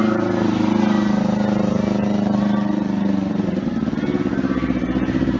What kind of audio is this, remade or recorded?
recorded